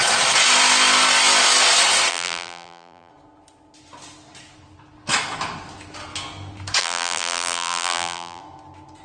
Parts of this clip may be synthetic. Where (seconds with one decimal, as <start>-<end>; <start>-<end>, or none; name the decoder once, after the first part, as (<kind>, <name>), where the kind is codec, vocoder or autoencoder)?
2.1-3.1 (vocoder, BigVGAN v2); 6.8-8.4